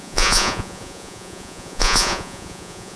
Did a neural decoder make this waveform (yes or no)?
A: yes